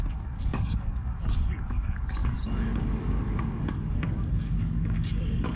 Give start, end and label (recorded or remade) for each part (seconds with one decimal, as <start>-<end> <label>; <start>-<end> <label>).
0.0-5.6 remade